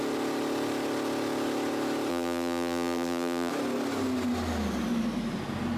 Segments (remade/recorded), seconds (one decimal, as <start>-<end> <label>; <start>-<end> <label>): 0.0-2.1 recorded; 2.1-3.5 remade; 3.5-5.8 recorded